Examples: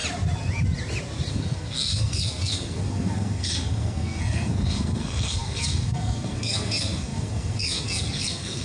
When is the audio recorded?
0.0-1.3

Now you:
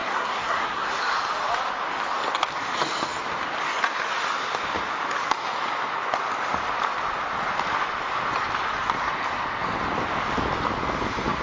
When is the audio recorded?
1.0-11.4

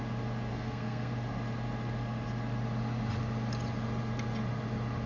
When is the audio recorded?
0.0-0.5; 1.1-5.1

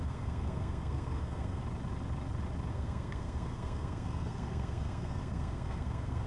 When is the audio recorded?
1.6-2.7